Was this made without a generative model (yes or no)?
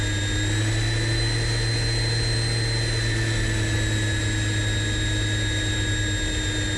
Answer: yes